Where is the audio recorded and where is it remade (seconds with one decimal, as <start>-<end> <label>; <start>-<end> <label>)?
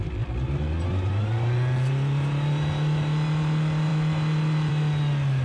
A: 0.0-5.4 recorded